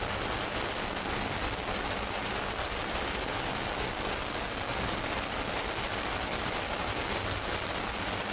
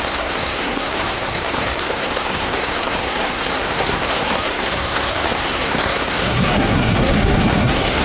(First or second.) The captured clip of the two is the first